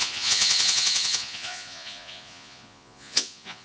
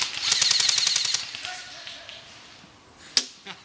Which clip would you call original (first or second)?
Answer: second